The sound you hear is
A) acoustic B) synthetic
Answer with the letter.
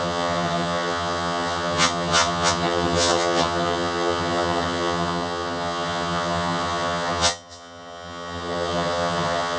B